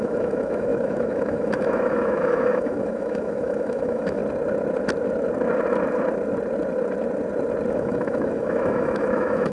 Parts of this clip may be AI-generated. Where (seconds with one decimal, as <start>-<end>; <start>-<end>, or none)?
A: 0.0-4.2; 7.7-9.5